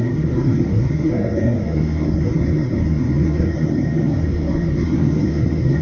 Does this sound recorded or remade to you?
remade